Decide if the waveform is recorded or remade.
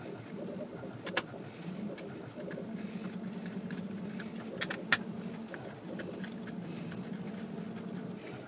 recorded